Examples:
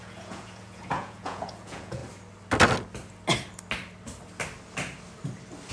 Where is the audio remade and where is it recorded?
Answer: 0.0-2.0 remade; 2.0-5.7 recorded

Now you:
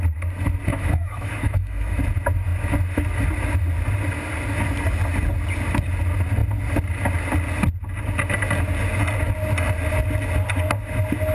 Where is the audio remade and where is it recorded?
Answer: 0.0-0.7 recorded; 0.7-2.0 remade; 2.0-11.3 recorded

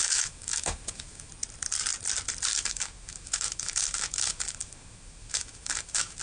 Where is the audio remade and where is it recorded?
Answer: 0.0-1.3 remade; 1.3-2.5 recorded; 2.5-6.2 remade

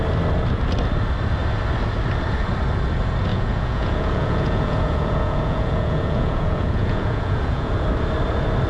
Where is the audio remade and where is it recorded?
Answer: 0.0-3.3 recorded; 3.3-7.7 remade; 7.7-8.7 recorded

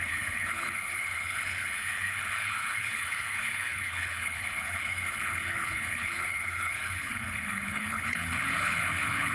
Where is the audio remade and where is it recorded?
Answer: 0.0-9.3 remade

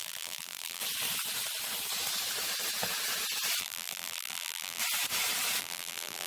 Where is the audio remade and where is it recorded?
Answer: 0.0-0.8 remade; 0.8-3.6 recorded; 3.6-4.8 remade; 4.8-5.6 recorded; 5.6-6.3 remade

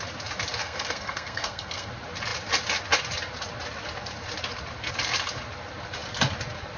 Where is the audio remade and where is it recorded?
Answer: 0.0-0.6 recorded; 0.6-1.9 remade; 1.9-6.8 recorded

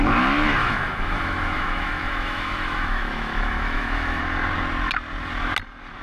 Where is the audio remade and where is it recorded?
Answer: 0.0-0.6 recorded; 0.6-4.2 remade; 4.2-6.0 recorded